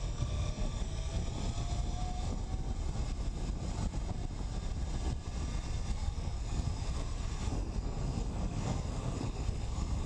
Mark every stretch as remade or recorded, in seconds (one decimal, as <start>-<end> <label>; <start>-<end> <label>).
0.0-1.2 remade; 1.2-5.9 recorded; 5.9-10.1 remade